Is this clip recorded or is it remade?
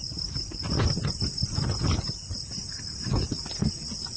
recorded